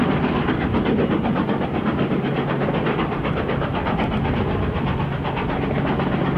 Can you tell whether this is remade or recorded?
recorded